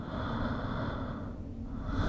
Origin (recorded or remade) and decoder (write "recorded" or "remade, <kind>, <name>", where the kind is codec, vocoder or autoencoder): recorded